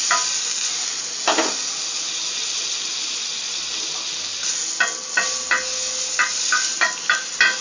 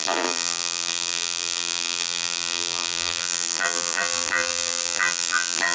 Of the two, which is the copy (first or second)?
second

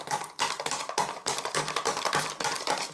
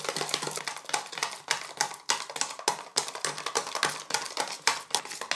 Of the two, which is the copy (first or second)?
first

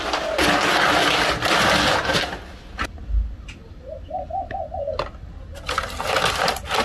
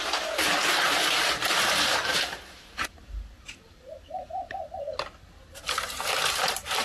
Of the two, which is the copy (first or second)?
second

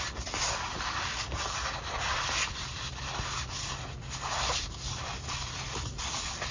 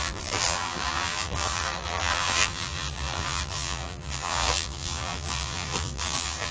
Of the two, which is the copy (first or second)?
second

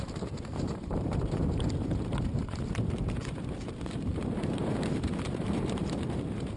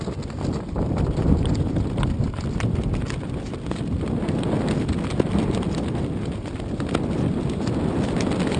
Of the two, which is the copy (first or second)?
first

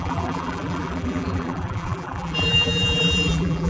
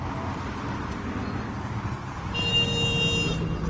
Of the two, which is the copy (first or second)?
first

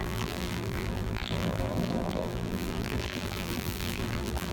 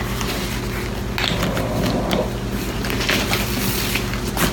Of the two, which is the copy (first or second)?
first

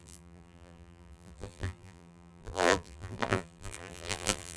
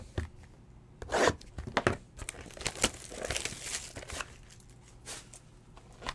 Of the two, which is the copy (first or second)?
first